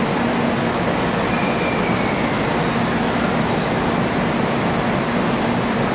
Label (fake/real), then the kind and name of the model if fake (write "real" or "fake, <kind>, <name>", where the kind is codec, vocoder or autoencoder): real